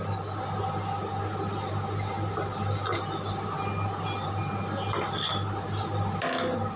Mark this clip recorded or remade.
recorded